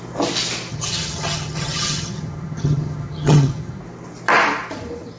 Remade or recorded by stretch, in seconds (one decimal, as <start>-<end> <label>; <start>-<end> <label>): 0.0-0.7 recorded; 0.7-3.8 remade; 3.8-5.2 recorded